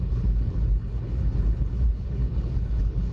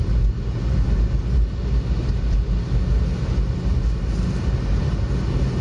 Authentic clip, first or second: second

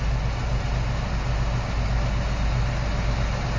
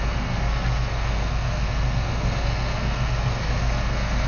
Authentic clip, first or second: first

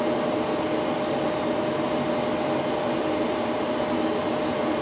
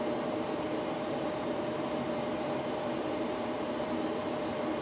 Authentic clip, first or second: first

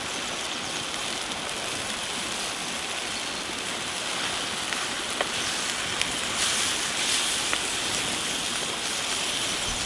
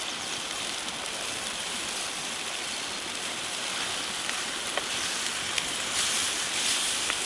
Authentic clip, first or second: first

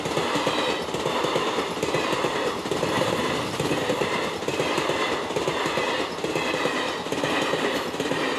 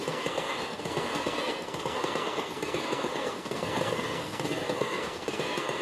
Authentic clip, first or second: first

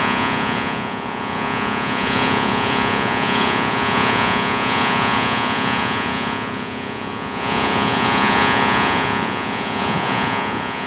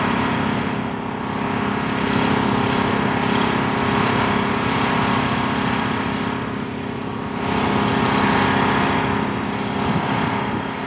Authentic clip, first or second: second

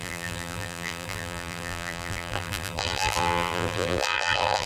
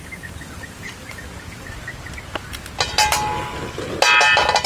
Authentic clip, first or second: second